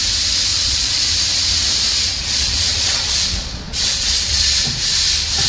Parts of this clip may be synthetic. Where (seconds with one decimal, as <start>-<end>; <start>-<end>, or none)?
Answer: 0.5-1.1; 2.2-4.6